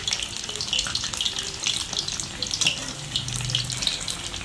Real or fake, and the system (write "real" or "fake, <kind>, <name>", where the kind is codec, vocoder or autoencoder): real